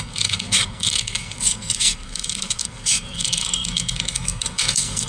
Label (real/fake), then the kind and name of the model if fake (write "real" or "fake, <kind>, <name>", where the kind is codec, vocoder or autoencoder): fake, codec, SNAC